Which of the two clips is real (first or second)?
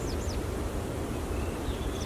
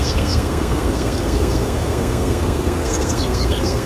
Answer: first